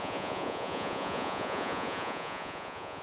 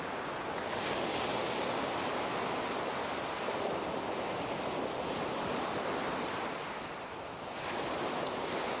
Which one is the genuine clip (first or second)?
second